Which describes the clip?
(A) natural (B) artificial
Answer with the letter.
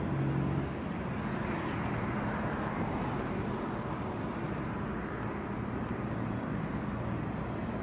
A